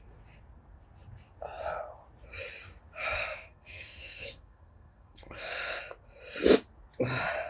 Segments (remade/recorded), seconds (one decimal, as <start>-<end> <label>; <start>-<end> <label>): 0.0-3.2 recorded; 3.2-5.8 remade; 5.8-7.5 recorded